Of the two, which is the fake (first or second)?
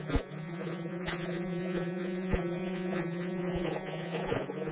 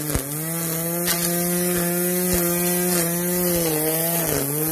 first